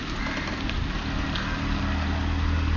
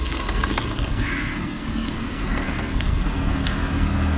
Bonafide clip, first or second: first